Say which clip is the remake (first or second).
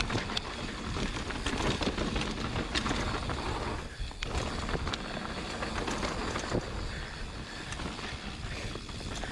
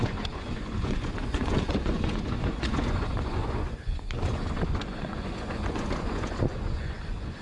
second